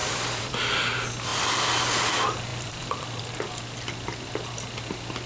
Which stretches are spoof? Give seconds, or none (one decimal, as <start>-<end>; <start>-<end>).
0.0-0.7; 2.5-3.2